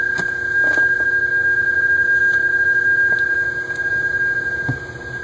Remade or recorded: recorded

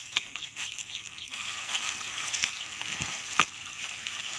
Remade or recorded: remade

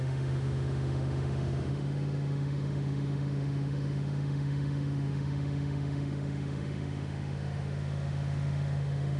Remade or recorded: remade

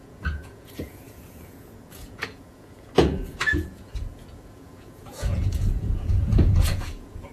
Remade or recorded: remade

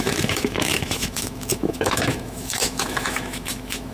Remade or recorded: remade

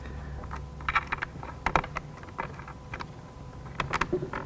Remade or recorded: recorded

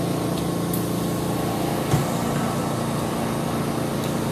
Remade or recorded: recorded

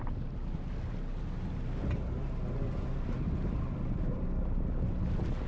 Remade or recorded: recorded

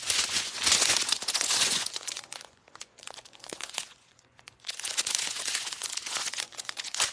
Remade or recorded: remade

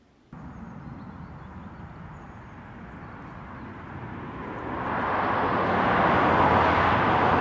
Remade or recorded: recorded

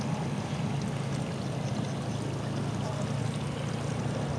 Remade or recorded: recorded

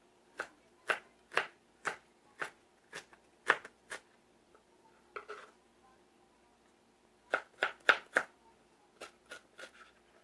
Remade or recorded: recorded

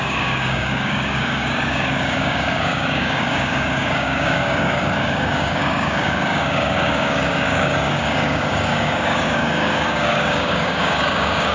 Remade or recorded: remade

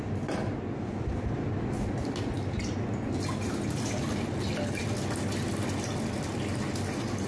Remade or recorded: recorded